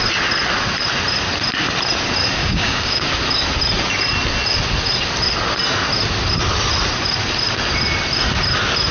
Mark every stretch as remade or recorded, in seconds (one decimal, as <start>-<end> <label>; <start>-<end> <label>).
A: 0.0-2.4 recorded; 2.4-3.0 remade; 3.0-8.9 recorded